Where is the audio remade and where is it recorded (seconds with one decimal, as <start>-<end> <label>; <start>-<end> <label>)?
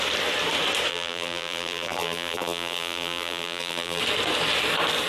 0.0-0.9 recorded; 0.9-4.0 remade; 4.0-5.1 recorded